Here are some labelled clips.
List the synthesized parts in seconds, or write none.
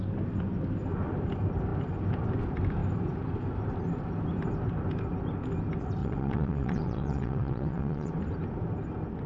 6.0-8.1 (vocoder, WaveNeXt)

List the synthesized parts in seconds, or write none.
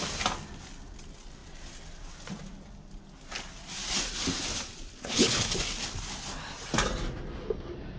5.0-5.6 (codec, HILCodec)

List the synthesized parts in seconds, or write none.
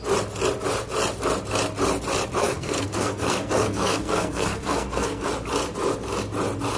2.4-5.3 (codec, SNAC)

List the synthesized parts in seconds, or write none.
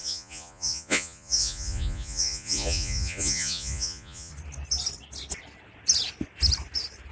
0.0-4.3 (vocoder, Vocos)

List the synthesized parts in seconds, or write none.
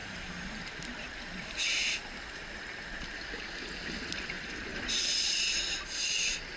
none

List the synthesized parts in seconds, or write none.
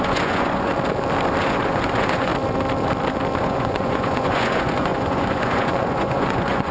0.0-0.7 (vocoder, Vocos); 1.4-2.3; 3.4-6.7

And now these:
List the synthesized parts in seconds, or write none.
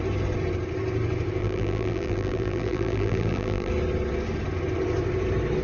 1.4-3.7 (vocoder, BigVGAN v2)